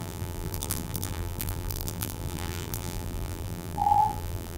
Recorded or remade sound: remade